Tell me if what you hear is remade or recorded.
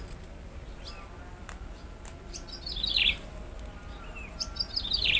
recorded